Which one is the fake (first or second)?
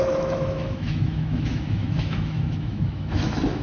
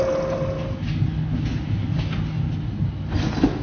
first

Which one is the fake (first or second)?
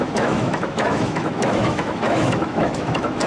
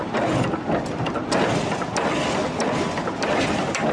first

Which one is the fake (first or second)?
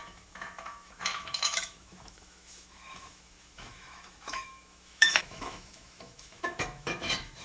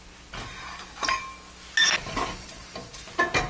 first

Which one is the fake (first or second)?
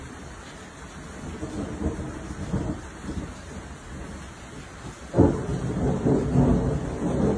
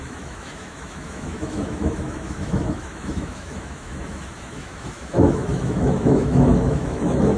second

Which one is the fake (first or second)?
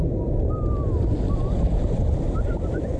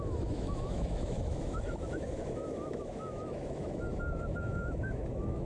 second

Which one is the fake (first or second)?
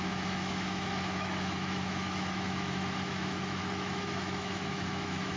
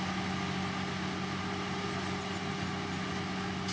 first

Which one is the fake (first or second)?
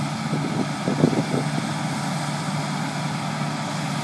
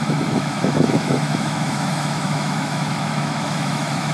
second